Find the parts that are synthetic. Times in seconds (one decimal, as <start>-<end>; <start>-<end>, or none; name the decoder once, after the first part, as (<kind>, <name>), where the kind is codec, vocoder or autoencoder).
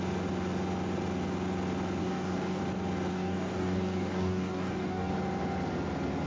2.0-2.6 (codec, DAC); 3.1-5.1